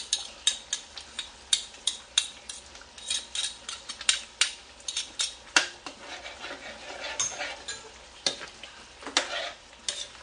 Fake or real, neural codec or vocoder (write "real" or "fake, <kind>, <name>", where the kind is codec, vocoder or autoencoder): real